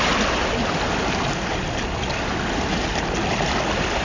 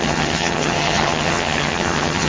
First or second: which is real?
first